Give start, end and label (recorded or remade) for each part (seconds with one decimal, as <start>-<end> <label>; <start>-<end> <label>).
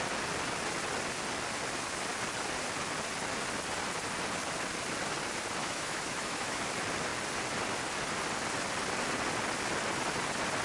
0.0-5.6 recorded; 5.6-6.6 remade; 6.6-10.6 recorded